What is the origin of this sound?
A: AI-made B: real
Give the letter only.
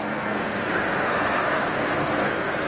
A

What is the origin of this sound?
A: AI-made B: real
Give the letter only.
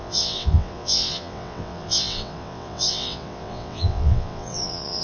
A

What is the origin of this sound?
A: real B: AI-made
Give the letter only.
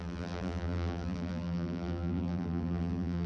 B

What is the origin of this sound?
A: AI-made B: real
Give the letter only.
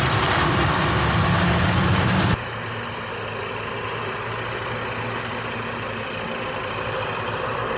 B